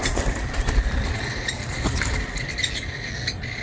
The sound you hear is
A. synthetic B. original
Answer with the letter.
B